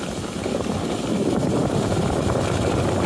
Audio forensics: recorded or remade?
recorded